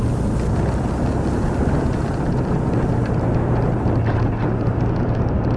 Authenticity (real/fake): real